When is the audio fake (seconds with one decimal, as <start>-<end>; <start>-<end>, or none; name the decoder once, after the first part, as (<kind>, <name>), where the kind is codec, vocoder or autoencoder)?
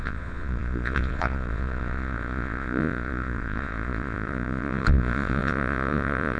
0.0-6.4 (vocoder, Vocos)